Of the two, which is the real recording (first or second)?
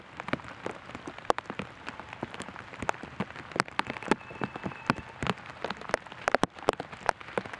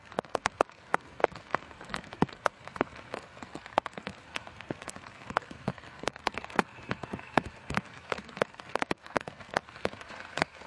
first